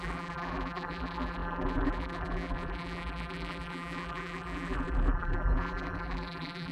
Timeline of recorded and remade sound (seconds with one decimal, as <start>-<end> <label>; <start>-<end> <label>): 0.0-6.7 remade